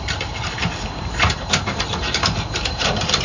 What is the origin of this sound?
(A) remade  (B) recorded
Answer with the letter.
A